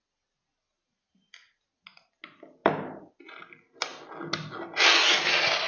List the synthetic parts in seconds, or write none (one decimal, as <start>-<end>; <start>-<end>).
none